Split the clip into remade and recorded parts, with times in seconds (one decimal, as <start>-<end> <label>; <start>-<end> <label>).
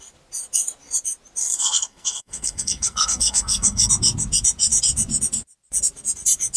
0.0-1.4 recorded; 1.4-3.9 remade; 3.9-6.6 recorded